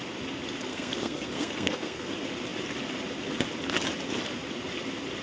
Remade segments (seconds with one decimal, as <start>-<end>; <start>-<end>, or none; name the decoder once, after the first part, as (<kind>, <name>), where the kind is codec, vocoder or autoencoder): 0.7-2.1 (codec, SNAC)